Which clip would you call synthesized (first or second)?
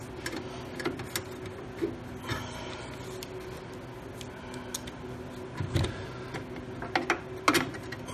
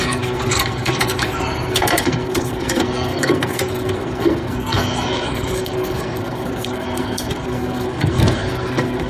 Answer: second